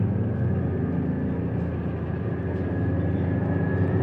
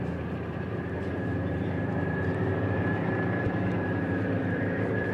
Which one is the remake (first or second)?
second